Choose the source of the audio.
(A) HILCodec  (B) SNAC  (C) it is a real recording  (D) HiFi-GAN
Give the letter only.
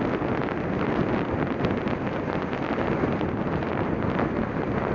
C